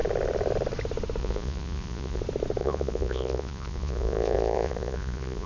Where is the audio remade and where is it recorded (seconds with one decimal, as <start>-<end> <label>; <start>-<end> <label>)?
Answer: 0.0-1.2 recorded; 1.2-2.2 remade; 2.2-2.6 recorded; 2.6-5.5 remade